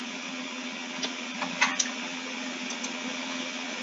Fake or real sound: fake